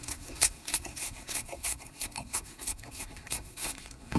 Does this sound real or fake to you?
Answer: fake